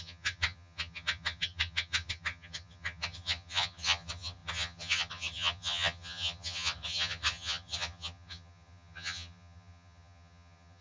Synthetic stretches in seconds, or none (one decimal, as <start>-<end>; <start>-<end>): 0.0-10.8